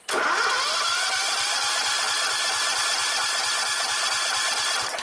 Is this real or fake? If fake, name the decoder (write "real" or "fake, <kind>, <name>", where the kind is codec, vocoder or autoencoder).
real